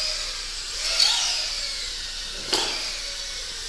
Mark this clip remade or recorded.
recorded